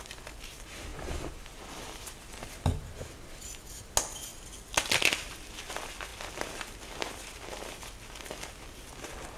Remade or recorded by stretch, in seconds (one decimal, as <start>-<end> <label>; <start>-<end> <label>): 0.0-9.4 recorded